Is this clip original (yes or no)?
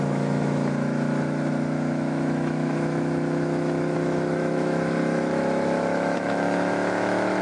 no